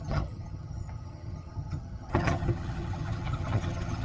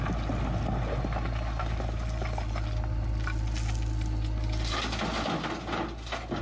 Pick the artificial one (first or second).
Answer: first